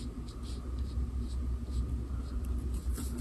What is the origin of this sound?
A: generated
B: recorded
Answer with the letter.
B